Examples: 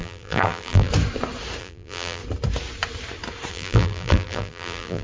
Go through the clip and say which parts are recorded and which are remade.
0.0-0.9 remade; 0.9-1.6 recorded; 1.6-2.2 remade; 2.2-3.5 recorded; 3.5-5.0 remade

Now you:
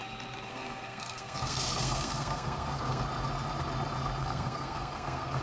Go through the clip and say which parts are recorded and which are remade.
0.0-0.5 recorded; 0.5-3.0 remade; 3.0-4.2 recorded; 4.2-5.4 remade

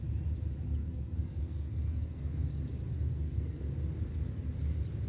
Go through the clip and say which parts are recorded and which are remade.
0.0-0.8 recorded; 0.8-2.5 remade; 2.5-3.1 recorded; 3.1-3.6 remade; 3.6-5.1 recorded

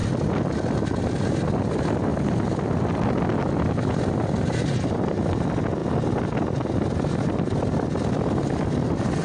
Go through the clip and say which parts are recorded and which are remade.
0.0-9.2 recorded

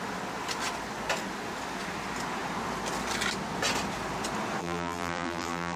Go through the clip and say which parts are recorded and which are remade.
0.0-4.6 recorded; 4.6-5.8 remade

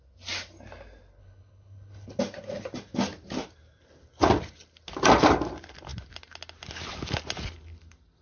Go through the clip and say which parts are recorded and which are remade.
0.0-1.2 recorded; 1.2-2.2 remade; 2.2-8.2 recorded